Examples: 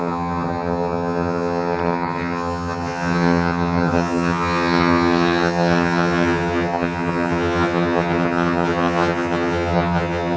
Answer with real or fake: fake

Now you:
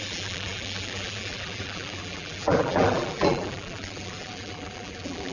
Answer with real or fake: fake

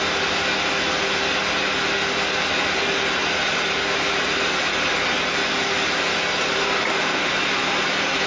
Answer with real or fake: real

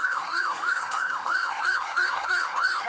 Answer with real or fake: fake